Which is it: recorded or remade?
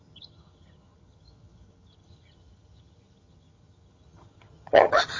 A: remade